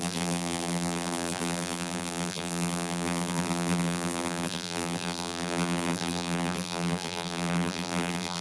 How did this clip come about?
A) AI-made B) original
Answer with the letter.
A